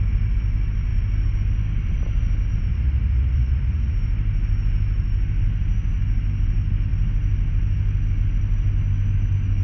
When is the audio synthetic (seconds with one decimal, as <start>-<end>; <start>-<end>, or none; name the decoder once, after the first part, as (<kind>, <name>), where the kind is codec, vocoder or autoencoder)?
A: 2.7-3.9 (vocoder, Vocos)